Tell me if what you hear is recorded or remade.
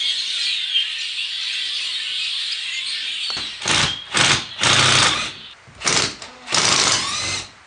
recorded